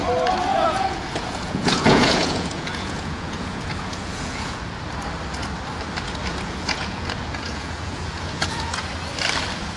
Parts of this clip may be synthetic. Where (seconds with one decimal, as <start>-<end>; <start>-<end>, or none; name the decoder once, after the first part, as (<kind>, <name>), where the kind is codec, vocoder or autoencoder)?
0.5-4.6 (vocoder, Vocos); 6.3-8.9